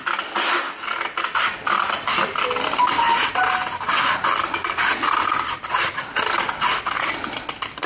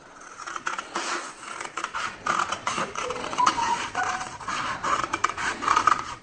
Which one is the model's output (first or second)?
second